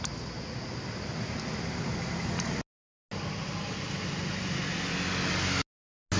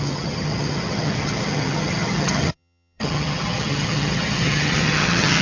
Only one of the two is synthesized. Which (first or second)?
second